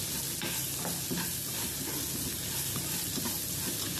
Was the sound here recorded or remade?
recorded